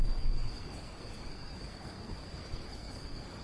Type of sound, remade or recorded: remade